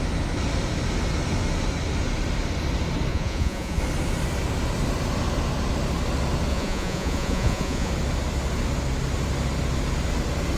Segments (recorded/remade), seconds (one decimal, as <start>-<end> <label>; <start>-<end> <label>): 0.0-3.1 recorded; 3.1-3.8 remade; 3.8-6.5 recorded; 6.5-7.9 remade; 7.9-10.6 recorded

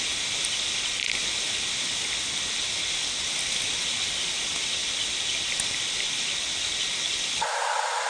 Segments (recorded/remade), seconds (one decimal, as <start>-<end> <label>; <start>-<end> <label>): 0.0-8.1 recorded

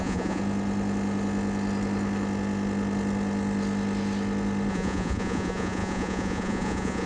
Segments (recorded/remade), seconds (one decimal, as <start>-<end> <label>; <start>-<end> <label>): 0.0-0.4 remade; 0.4-4.7 recorded; 4.7-7.1 remade

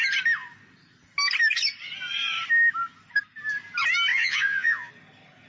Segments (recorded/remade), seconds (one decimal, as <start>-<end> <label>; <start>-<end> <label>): 0.0-4.1 recorded; 4.1-4.9 remade; 4.9-5.5 recorded